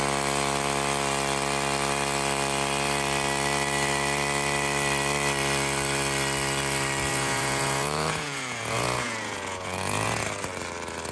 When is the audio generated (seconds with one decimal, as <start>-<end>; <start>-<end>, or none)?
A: 7.1-10.2